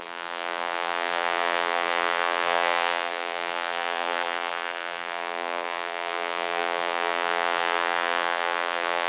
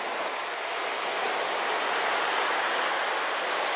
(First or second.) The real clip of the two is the second